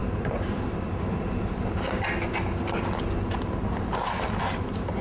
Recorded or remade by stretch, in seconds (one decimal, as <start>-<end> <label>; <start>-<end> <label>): 0.0-5.0 recorded